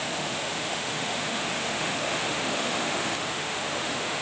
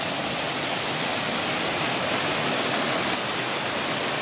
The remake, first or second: first